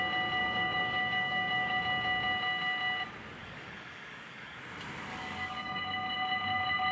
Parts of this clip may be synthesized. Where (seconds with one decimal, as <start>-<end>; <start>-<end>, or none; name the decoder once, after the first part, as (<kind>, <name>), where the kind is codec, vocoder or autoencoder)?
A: 0.4-1.8 (codec, DAC); 3.4-4.6; 5.1-5.8